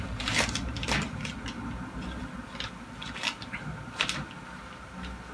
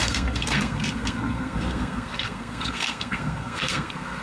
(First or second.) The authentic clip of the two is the first